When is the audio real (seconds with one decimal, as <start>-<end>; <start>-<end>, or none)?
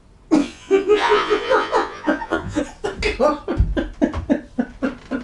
0.0-0.4; 2.6-5.2